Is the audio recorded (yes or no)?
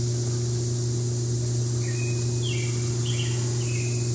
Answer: yes